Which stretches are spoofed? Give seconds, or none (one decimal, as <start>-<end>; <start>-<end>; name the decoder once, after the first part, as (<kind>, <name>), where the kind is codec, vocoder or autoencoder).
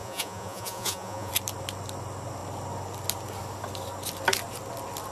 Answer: 0.0-1.3 (vocoder, Vocos)